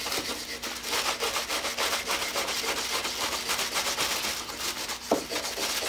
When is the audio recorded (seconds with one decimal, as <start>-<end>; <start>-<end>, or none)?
0.0-5.9